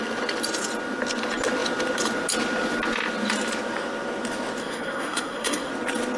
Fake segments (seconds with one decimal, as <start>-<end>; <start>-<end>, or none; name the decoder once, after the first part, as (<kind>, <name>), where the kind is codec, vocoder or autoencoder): 4.6-5.7 (codec, SNAC)